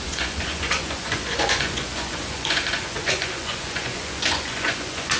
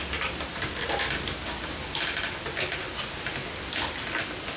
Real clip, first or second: second